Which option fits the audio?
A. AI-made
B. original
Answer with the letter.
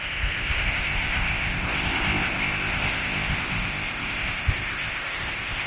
A